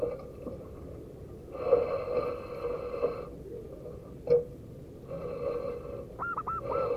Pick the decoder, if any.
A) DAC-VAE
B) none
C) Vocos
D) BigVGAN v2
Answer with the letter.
D